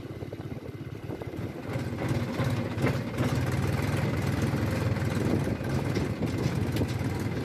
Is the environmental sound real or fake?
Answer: real